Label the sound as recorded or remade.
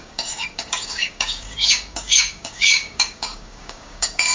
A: remade